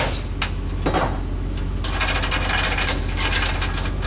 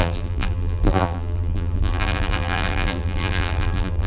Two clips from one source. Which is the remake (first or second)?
second